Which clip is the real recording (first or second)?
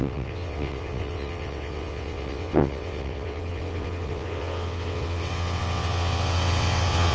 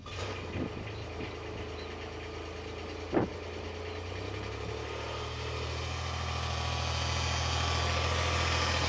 second